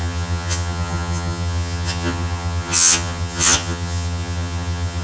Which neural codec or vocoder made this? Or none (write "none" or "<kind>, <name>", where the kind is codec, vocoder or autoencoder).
vocoder, HiFi-GAN